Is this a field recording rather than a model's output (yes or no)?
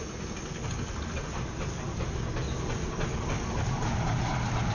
yes